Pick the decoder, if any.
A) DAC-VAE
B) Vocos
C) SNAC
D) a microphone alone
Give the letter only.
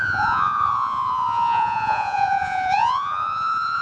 B